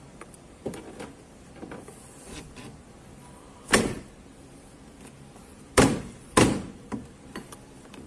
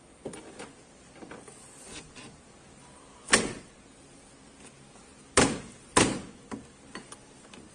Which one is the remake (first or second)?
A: first